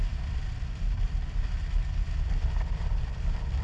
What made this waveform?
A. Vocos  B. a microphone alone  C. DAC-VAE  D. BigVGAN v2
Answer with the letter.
D